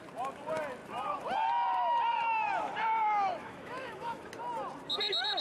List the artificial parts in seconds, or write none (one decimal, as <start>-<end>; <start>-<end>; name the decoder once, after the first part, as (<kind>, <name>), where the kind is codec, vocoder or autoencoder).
3.4-4.3 (autoencoder, DAC-VAE)